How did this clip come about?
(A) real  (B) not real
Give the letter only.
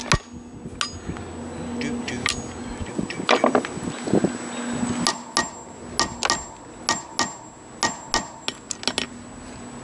A